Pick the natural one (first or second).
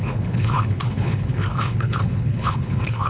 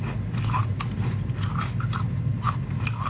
second